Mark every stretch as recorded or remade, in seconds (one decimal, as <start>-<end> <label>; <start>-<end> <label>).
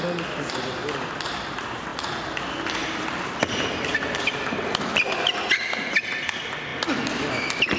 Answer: 0.0-7.8 recorded